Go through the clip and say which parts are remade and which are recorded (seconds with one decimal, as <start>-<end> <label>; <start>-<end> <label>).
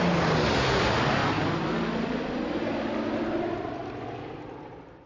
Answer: 0.0-5.1 recorded